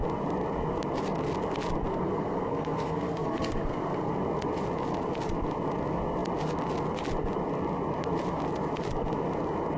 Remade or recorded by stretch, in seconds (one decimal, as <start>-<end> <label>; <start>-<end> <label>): 0.0-1.9 recorded; 1.9-4.1 remade; 4.1-9.8 recorded

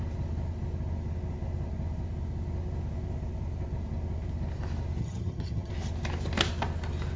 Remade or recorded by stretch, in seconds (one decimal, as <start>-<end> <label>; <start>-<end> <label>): 0.0-5.0 recorded; 5.0-5.7 remade; 5.7-7.2 recorded

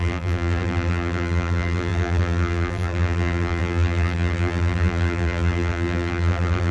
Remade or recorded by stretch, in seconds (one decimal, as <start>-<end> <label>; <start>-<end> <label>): 0.0-6.7 remade

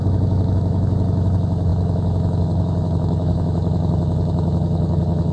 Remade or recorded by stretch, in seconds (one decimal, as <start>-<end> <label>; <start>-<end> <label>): 0.0-5.3 remade

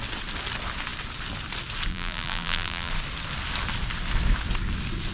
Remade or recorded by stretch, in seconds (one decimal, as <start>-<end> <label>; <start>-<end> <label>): 0.0-1.9 recorded; 1.9-2.9 remade; 2.9-5.1 recorded